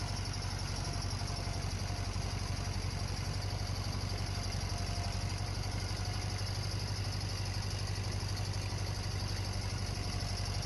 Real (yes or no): yes